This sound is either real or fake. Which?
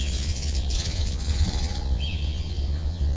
fake